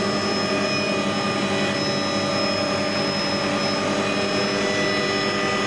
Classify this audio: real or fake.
real